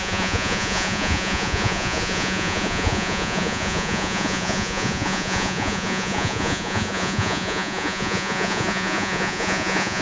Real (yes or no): no